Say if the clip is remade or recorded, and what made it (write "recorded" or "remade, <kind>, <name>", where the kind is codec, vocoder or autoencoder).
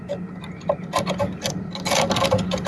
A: recorded